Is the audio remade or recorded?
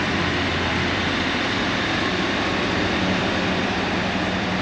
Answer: remade